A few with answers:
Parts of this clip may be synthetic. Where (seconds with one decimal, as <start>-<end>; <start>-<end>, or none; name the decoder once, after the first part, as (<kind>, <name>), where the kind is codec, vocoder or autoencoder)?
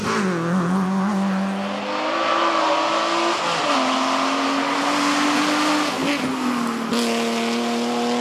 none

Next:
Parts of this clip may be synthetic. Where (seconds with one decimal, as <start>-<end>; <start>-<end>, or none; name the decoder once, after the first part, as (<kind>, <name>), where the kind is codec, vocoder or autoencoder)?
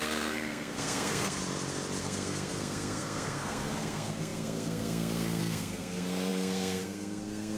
0.0-1.4 (codec, SNAC); 2.0-7.6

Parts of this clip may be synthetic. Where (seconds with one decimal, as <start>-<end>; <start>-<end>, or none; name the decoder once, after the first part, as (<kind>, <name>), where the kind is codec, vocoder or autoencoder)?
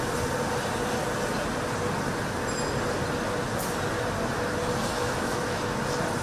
4.9-5.6 (autoencoder, DAC-VAE)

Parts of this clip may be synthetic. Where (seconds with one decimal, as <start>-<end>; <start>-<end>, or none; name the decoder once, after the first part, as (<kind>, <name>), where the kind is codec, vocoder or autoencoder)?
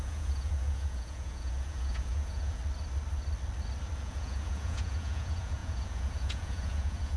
0.0-2.6 (vocoder, Vocos); 4.0-7.2